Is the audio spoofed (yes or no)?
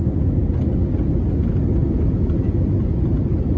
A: no